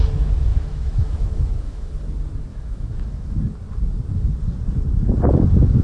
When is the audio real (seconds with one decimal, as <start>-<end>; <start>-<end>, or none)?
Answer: 0.0-0.5; 1.9-2.5; 3.4-5.8